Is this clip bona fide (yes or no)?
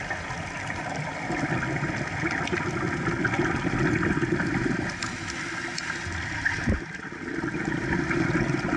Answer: yes